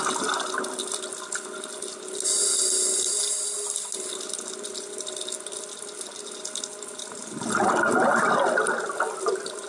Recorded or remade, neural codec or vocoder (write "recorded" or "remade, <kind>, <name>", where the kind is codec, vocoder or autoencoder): recorded